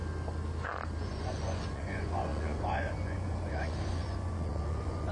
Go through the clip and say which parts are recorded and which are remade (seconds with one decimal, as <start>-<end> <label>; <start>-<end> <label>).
0.0-1.0 recorded; 1.0-5.1 remade